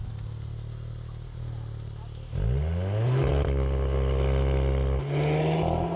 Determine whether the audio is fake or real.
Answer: real